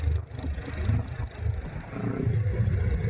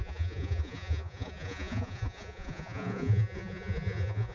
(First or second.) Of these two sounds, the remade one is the second